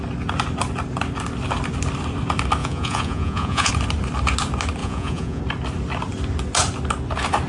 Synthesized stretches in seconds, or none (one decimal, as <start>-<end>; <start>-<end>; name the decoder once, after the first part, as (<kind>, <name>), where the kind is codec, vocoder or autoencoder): 2.6-3.7 (vocoder, Vocos); 4.8-5.4